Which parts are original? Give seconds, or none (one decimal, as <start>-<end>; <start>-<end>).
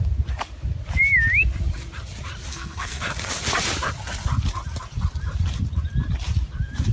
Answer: 0.0-2.5; 3.0-6.9